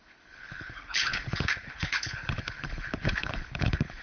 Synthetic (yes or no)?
yes